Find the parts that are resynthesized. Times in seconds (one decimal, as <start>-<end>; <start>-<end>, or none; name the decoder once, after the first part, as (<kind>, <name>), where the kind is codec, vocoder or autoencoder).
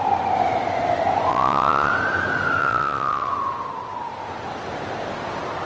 1.3-1.9 (vocoder, WaveNeXt); 2.6-3.3